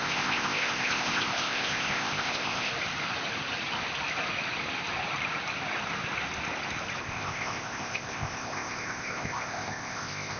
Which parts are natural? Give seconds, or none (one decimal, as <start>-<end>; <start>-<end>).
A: 2.7-7.0